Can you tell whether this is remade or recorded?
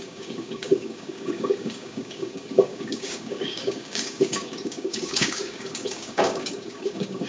remade